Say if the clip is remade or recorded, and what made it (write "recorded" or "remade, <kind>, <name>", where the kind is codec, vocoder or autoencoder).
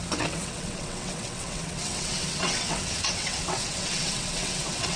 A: remade, vocoder, WaveNeXt